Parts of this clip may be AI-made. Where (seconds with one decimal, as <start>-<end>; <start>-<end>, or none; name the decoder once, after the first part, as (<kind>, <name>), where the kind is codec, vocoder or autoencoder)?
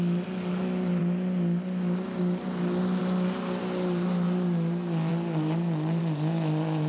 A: none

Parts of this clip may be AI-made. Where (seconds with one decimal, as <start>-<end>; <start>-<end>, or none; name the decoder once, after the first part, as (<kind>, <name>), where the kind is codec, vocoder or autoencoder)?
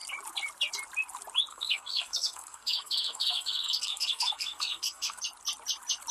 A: 1.5-5.2 (codec, SNAC)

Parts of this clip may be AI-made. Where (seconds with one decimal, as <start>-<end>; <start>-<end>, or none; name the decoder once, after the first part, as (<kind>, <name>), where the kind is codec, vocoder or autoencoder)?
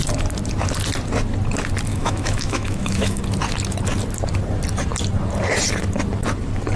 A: 1.9-3.2 (autoencoder, DAC-VAE)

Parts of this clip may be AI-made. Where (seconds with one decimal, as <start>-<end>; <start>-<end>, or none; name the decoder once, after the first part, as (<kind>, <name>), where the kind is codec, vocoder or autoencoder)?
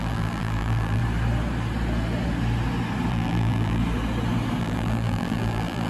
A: 0.0-1.0 (vocoder, BigVGAN v2); 3.1-3.8; 4.6-5.9